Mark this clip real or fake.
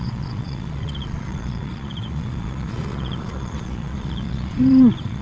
fake